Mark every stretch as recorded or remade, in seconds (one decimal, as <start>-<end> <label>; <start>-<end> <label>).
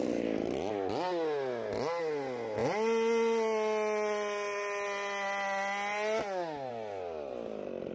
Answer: 0.0-7.9 recorded